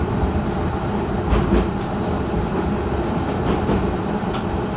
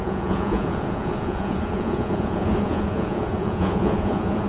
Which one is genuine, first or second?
first